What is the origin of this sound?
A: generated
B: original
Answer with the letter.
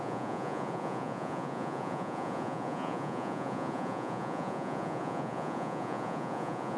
A